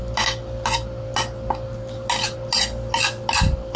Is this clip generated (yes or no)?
no